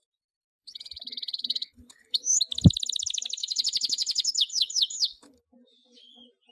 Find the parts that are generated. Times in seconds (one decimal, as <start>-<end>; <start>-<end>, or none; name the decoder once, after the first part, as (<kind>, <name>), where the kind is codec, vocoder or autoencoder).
0.6-2.4 (codec, HILCodec); 3.4-5.4